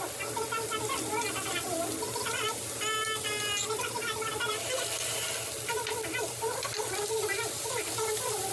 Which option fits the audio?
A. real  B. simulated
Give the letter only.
A